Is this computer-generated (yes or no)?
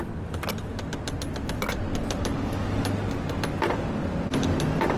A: no